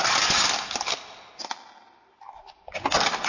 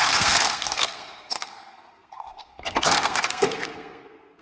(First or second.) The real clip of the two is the first